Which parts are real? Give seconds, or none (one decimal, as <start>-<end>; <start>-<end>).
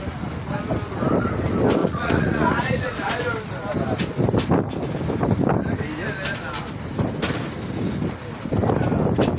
0.0-1.8; 3.1-9.4